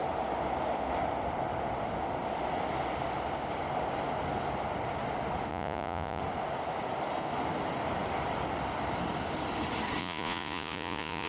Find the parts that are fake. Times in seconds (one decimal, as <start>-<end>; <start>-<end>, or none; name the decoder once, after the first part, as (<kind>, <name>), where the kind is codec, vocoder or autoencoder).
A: 5.5-6.2 (vocoder, Vocos); 10.0-11.3